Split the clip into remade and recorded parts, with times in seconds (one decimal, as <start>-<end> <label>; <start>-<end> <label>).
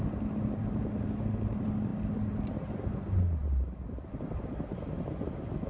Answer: 0.0-5.7 recorded